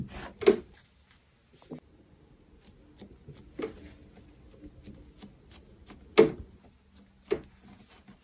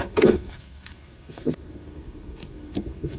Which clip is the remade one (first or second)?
second